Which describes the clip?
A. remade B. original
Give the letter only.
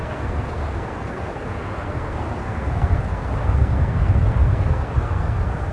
A